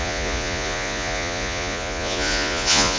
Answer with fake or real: fake